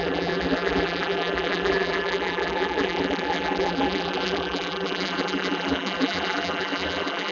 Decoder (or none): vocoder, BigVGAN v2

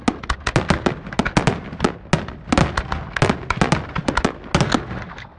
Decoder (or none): none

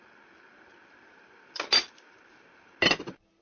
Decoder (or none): none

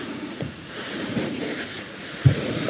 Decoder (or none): vocoder, Vocos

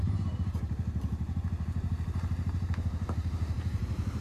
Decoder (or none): vocoder, BigVGAN v2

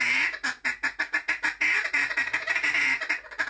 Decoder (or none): none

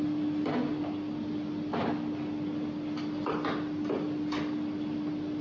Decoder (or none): none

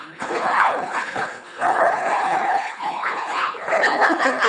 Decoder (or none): codec, HILCodec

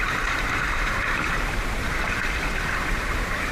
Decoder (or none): vocoder, BigVGAN v2